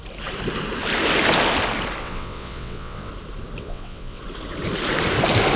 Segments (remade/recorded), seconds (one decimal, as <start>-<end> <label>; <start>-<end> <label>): 0.0-2.0 recorded; 2.0-3.1 remade; 3.1-3.6 recorded; 3.6-4.2 remade; 4.2-5.6 recorded